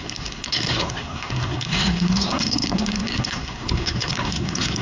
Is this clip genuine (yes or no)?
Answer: no